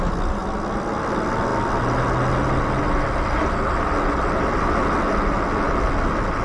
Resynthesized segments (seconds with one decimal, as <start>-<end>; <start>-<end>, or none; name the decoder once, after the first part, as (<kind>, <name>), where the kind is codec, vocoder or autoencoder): none